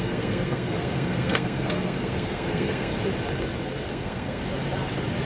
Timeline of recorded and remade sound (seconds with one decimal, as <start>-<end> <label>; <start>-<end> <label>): 0.0-2.9 remade; 2.9-3.9 recorded; 3.9-4.4 remade; 4.4-5.2 recorded